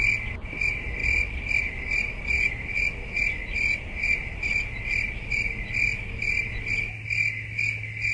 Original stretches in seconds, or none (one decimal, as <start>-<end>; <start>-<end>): 0.0-8.1